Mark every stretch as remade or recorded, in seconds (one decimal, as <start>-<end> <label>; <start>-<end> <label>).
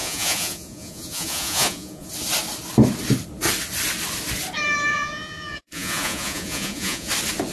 0.0-2.1 remade; 2.1-4.9 recorded; 4.9-7.1 remade; 7.1-7.5 recorded